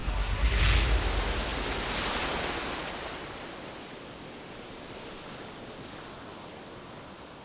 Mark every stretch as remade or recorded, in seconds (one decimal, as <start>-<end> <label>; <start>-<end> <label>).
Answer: 0.0-0.6 remade; 0.6-7.4 recorded